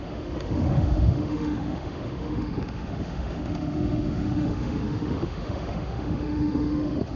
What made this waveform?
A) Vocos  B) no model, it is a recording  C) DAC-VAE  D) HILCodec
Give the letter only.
C